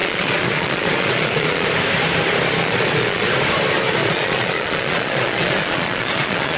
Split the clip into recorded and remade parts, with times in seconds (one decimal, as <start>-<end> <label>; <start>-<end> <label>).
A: 0.0-1.7 remade; 1.7-2.6 recorded; 2.6-3.3 remade; 3.3-4.0 recorded; 4.0-6.6 remade